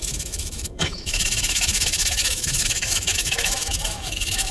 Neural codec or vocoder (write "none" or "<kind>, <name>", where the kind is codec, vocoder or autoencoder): autoencoder, DAC-VAE